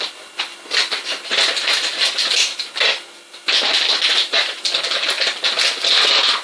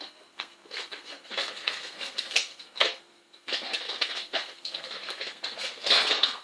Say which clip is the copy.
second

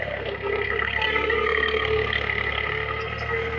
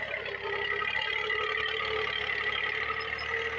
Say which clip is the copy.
first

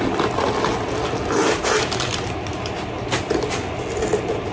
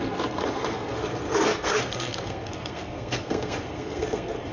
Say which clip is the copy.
second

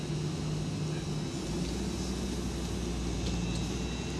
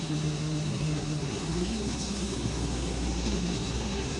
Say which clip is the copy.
second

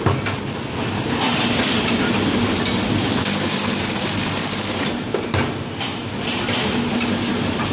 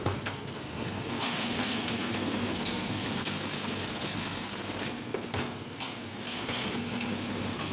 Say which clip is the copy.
second